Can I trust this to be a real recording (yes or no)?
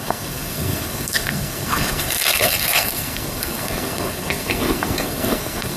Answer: no